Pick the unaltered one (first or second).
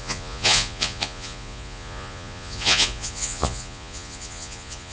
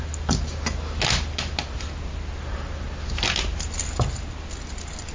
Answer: second